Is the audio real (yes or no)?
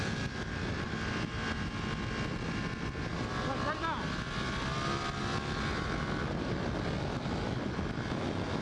yes